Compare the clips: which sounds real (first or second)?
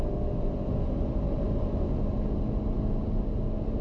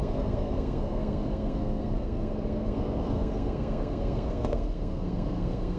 first